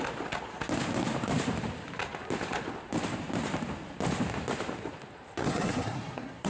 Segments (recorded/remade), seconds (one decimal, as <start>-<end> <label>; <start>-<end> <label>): 0.0-5.4 recorded; 5.4-6.5 remade